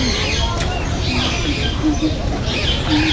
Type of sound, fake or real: real